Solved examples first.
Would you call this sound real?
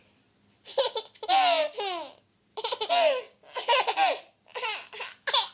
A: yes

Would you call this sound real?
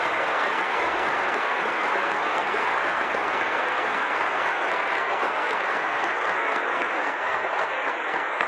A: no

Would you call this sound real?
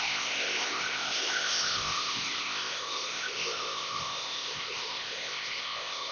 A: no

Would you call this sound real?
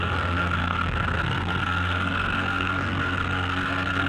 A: no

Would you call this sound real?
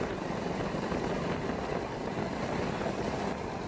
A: yes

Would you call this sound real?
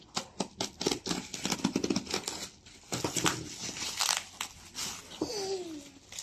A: yes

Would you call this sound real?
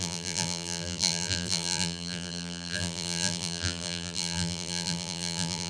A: no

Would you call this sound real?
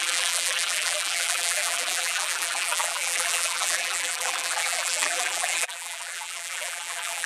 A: no